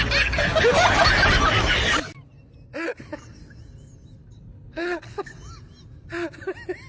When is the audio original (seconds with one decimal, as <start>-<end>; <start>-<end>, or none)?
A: 0.0-4.2; 5.3-6.9